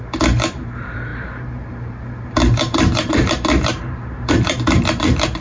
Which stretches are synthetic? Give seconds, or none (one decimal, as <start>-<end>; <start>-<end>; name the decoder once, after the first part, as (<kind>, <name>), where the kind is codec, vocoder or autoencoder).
0.0-5.4 (vocoder, BigVGAN v2)